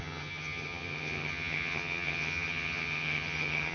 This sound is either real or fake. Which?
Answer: fake